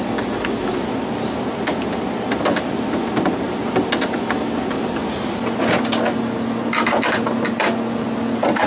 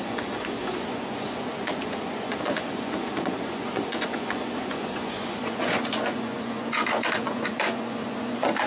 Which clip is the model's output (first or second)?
second